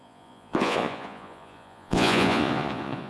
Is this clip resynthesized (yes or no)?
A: yes